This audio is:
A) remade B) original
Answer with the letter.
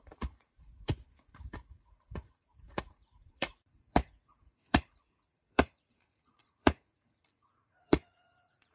A